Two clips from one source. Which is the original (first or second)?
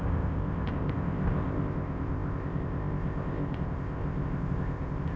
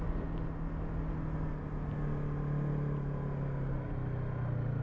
second